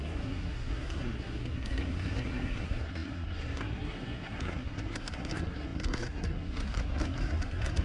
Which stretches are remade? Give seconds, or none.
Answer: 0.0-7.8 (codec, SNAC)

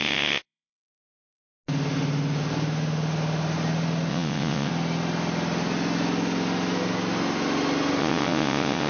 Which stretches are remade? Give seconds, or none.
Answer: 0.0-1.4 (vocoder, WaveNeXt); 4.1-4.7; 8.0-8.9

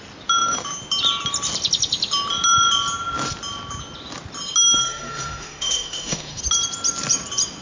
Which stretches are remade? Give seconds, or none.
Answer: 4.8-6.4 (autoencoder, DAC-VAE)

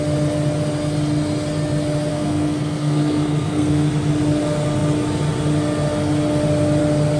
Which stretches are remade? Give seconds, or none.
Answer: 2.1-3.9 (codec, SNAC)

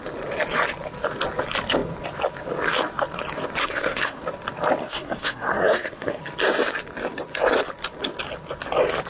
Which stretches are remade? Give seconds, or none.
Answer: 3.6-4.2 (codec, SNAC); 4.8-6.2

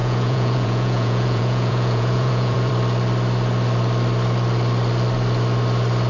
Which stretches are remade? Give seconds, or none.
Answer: 0.0-2.7 (vocoder, Vocos)

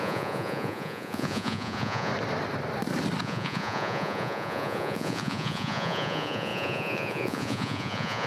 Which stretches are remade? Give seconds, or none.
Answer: 0.0-2.1 (vocoder, Vocos); 3.2-8.3